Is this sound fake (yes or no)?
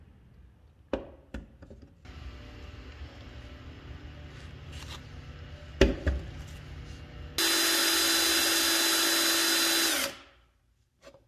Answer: no